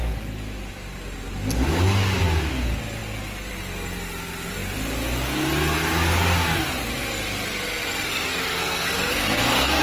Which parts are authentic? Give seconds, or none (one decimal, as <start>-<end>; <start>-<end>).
0.0-8.1